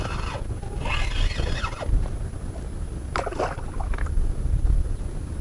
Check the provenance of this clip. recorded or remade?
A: recorded